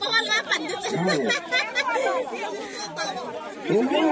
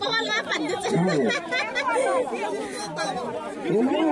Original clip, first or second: second